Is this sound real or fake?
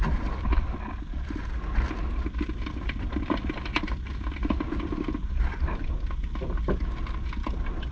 real